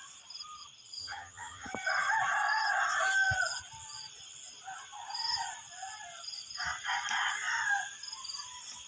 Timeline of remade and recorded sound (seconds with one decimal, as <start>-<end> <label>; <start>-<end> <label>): 0.0-1.0 recorded; 1.0-1.7 remade; 1.7-8.9 recorded